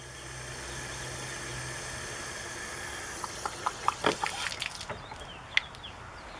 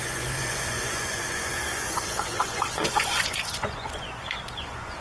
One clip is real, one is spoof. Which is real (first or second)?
first